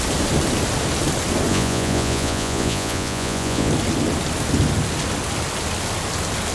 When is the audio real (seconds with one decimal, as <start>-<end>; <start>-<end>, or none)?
0.0-1.5; 3.7-6.5